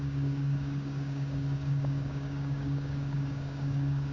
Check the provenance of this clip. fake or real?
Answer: fake